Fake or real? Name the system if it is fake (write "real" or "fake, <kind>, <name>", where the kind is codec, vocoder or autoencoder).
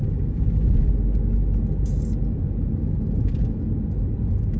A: real